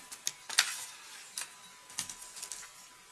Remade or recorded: recorded